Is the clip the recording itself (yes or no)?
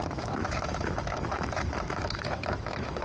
no